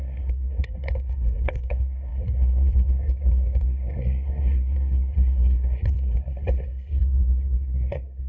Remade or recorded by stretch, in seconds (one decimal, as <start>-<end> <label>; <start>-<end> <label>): 0.0-8.3 remade